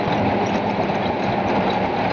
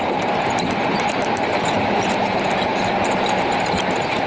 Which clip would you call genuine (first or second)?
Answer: first